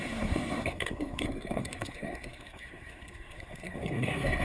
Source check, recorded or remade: remade